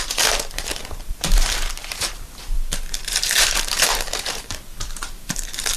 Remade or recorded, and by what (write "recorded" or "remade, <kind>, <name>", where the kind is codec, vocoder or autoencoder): remade, vocoder, BigVGAN v2